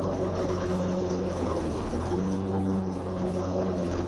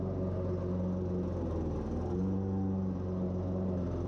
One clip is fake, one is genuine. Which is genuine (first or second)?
second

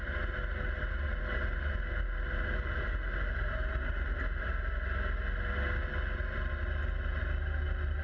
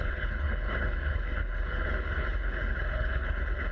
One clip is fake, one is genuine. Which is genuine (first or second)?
first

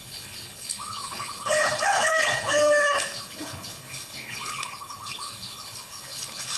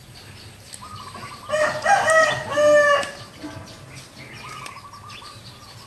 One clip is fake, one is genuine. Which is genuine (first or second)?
second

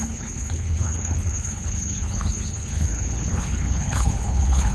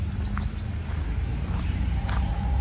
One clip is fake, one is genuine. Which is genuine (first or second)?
second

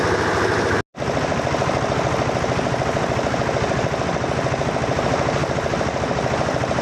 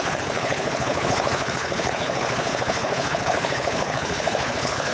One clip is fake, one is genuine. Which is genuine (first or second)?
first